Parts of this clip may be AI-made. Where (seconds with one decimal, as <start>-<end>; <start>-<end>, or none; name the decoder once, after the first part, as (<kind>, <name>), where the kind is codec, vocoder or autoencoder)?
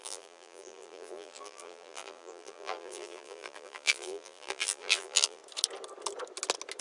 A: 0.0-5.4 (vocoder, BigVGAN v2)